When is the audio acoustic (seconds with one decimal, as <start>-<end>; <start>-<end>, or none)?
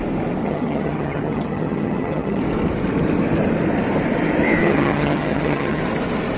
0.0-0.4; 2.4-4.6; 5.8-6.4